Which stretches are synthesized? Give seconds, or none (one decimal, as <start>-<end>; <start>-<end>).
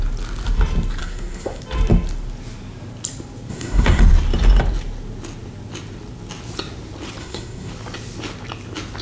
1.0-1.6; 3.5-4.0; 7.2-7.7